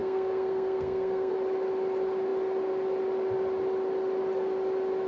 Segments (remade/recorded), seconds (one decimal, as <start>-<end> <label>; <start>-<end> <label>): 0.0-1.3 remade; 1.3-5.1 recorded